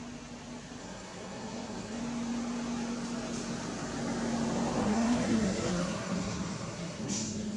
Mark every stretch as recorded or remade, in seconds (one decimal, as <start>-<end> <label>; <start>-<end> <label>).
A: 0.0-0.8 recorded; 0.8-2.0 remade; 2.0-4.8 recorded; 4.8-7.6 remade